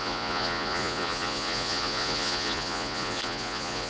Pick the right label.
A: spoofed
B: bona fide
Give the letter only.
A